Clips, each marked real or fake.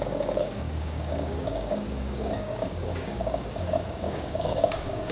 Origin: fake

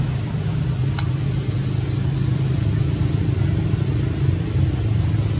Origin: real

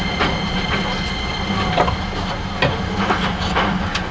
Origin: real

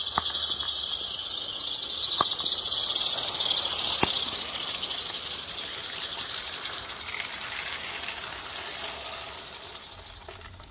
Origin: real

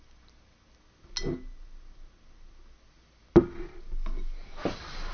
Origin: real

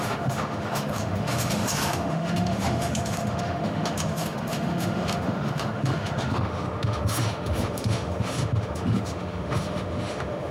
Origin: fake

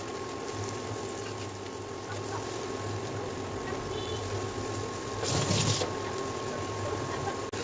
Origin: real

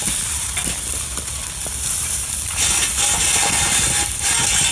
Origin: real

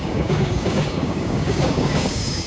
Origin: fake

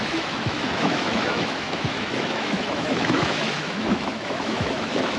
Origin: fake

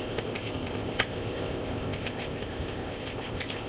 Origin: fake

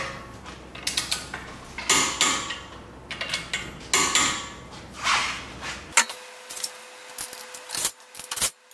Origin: real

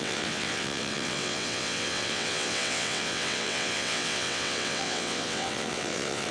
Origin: fake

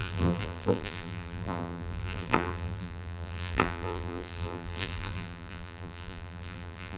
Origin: fake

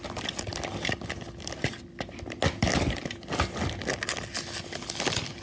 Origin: real